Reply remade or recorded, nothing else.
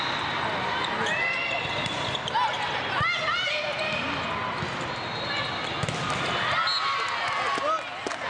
recorded